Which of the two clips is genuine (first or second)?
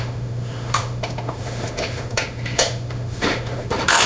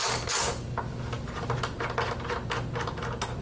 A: second